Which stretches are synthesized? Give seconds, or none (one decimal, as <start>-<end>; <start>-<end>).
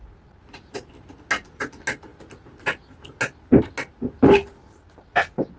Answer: none